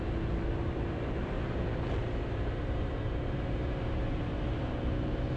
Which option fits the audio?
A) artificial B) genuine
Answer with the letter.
A